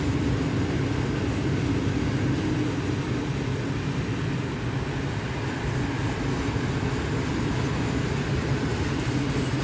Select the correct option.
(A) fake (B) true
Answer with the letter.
B